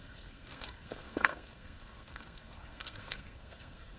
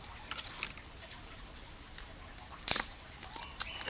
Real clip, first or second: second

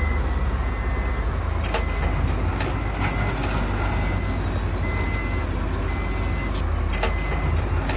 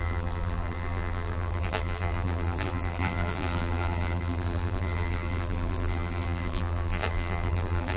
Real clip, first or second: first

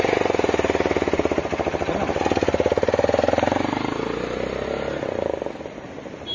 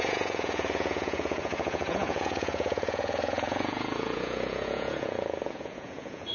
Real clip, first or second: first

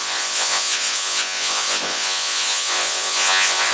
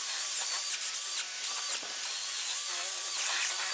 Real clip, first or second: second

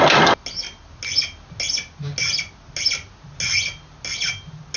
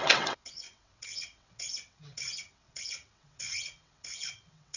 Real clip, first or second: first